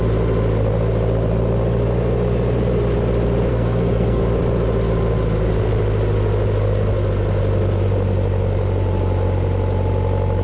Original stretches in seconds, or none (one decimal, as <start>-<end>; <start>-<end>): 0.0-3.5; 4.2-10.4